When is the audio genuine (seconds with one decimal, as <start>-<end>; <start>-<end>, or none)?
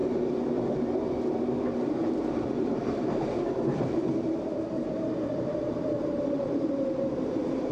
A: 0.0-1.6